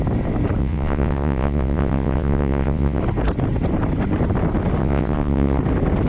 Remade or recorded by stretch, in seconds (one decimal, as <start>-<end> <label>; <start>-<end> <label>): 0.0-0.6 recorded; 0.6-3.0 remade; 3.0-4.8 recorded; 4.8-5.6 remade; 5.6-6.1 recorded